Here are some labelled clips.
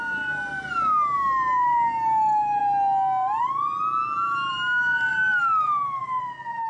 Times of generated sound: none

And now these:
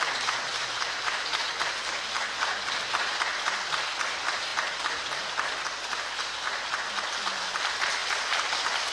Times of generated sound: none